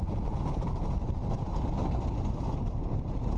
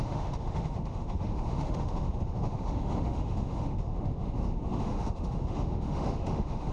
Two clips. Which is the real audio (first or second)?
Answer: first